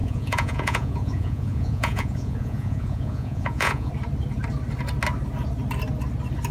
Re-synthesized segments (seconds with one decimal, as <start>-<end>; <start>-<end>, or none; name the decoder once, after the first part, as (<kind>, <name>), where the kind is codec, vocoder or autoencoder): 0.0-3.9 (vocoder, Vocos)